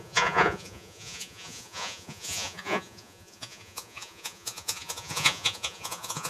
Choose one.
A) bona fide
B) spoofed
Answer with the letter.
B